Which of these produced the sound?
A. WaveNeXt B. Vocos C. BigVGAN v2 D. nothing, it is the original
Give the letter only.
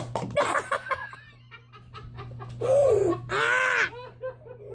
D